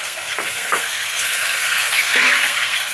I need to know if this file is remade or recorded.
remade